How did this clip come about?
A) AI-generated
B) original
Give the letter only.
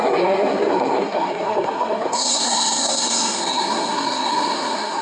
A